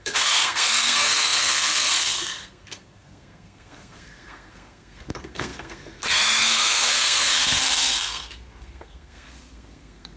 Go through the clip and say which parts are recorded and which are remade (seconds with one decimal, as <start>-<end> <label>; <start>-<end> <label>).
0.0-10.2 remade